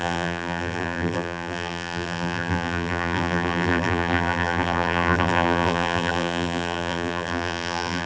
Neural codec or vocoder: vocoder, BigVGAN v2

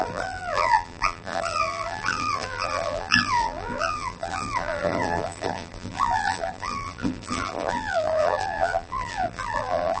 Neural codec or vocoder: vocoder, BigVGAN v2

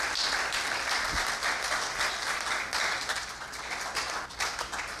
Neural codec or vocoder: none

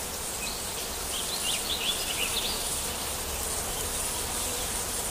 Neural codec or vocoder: none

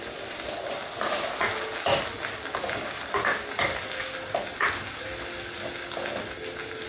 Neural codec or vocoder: none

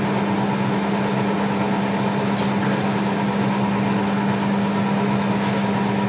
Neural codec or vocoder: none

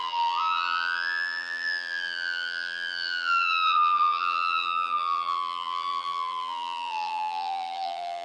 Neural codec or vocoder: vocoder, BigVGAN v2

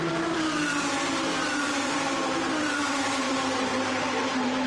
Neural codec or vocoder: vocoder, BigVGAN v2